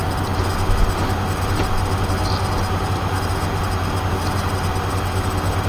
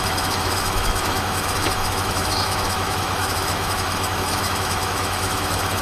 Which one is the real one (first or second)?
first